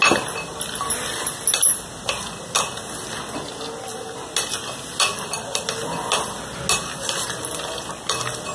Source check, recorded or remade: recorded